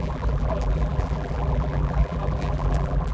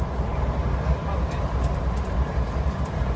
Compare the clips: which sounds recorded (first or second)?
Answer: second